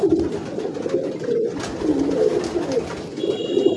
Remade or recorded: recorded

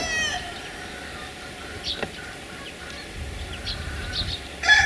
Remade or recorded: recorded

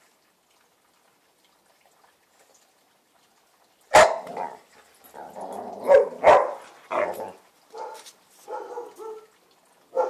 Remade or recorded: recorded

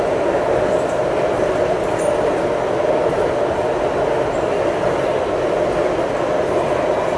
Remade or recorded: recorded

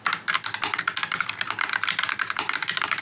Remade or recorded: recorded